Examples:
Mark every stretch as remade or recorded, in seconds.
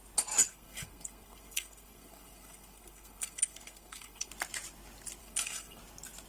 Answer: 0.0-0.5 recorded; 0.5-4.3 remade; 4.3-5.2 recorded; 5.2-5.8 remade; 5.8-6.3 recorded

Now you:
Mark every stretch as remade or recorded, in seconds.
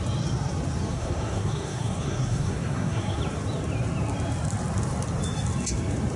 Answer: 0.0-0.9 recorded; 0.9-3.2 remade; 3.2-6.2 recorded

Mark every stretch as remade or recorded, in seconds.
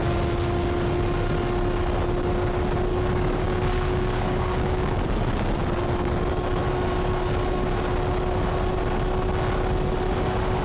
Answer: 0.0-2.9 recorded; 2.9-5.0 remade; 5.0-10.6 recorded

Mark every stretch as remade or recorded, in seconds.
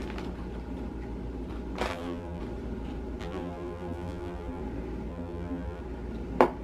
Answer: 0.0-1.9 recorded; 1.9-2.4 remade; 2.4-3.2 recorded; 3.2-4.6 remade; 4.6-5.1 recorded; 5.1-5.8 remade; 5.8-6.6 recorded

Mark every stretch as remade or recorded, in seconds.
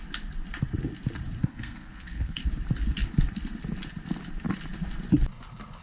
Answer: 0.0-1.4 recorded; 1.4-2.4 remade; 2.4-5.8 recorded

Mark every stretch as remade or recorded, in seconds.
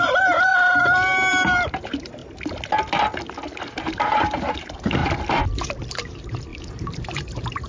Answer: 0.0-2.2 remade; 2.2-3.7 recorded; 3.7-5.0 remade; 5.0-5.6 recorded; 5.6-7.7 remade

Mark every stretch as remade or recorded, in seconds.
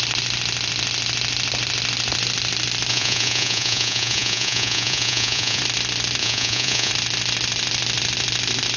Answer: 0.0-2.9 recorded; 2.9-5.6 remade; 5.6-6.2 recorded; 6.2-6.9 remade; 6.9-8.8 recorded